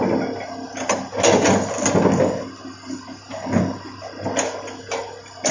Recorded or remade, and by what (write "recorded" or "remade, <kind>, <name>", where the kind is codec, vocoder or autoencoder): recorded